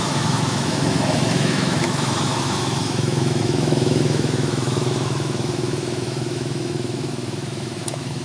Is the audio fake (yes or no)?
yes